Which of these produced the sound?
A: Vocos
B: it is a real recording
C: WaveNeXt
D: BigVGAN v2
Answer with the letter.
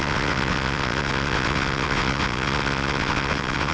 C